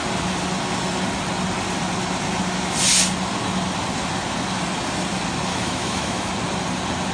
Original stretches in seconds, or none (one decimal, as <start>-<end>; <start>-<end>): 0.0-5.5; 6.3-7.1